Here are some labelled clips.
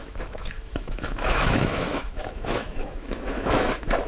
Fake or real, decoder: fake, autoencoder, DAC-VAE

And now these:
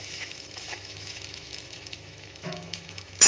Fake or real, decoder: fake, autoencoder, DAC-VAE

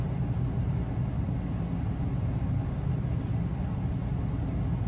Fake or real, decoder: real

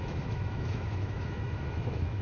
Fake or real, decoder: fake, autoencoder, DAC-VAE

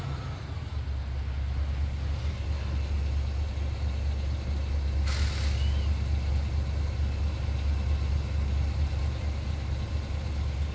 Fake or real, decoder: real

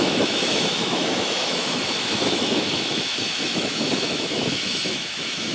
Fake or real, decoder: fake, autoencoder, DAC-VAE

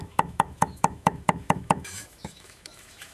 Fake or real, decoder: fake, autoencoder, DAC-VAE